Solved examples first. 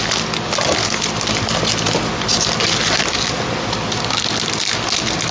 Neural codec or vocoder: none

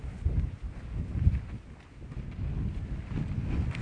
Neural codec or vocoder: none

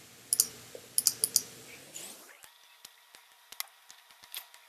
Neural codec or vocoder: none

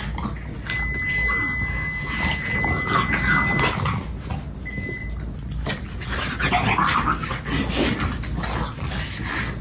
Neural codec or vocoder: none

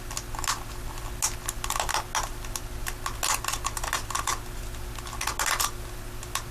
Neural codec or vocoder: none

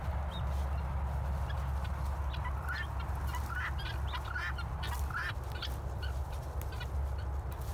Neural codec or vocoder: none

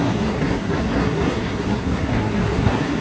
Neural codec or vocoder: codec, SNAC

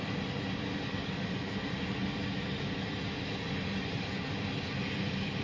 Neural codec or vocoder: none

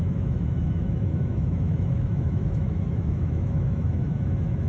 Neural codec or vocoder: autoencoder, DAC-VAE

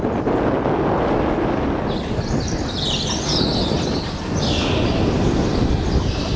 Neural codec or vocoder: none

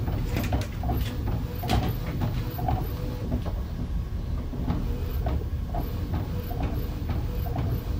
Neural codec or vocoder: none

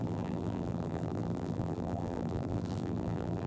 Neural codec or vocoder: vocoder, BigVGAN v2